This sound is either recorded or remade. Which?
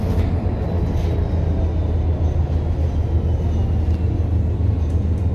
recorded